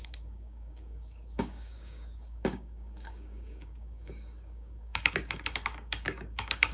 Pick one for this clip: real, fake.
fake